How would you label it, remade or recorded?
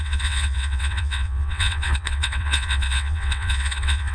remade